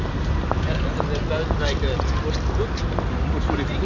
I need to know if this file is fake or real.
real